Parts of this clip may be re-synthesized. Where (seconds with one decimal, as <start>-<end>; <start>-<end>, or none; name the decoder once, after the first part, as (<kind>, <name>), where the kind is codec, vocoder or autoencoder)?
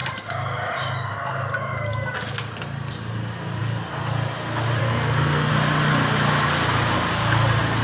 4.8-5.5 (codec, SNAC)